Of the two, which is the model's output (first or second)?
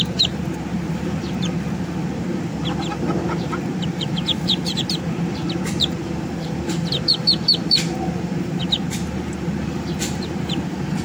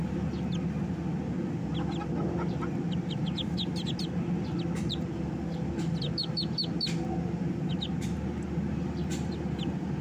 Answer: first